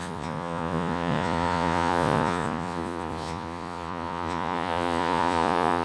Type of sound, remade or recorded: remade